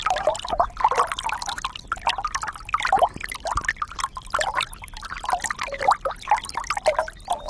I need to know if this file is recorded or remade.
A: recorded